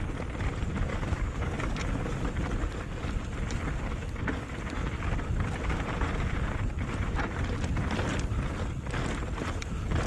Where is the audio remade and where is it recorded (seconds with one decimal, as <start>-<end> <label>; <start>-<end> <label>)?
0.0-0.9 recorded; 0.9-1.8 remade; 1.8-10.1 recorded